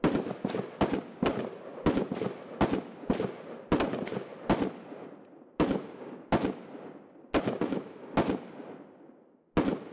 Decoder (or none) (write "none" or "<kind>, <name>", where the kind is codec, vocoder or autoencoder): none